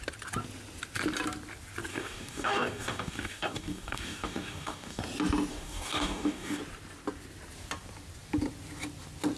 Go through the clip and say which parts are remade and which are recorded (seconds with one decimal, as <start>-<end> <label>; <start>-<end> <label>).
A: 0.0-1.9 recorded; 1.9-5.0 remade; 5.0-5.5 recorded; 5.5-6.6 remade; 6.6-9.4 recorded